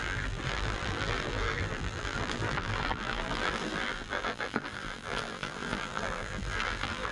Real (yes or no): no